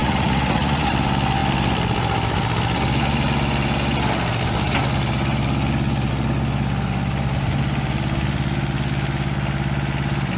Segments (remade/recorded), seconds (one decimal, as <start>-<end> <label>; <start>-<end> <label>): 0.0-0.9 remade; 0.9-10.4 recorded